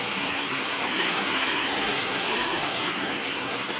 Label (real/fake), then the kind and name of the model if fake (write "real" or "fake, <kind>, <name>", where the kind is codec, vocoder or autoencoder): fake, codec, SNAC